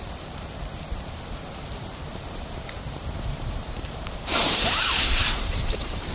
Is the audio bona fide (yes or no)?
no